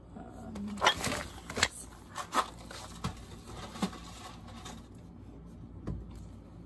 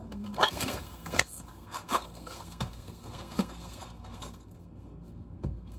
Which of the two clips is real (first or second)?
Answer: first